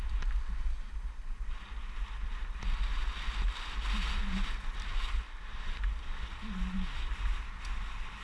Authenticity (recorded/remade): recorded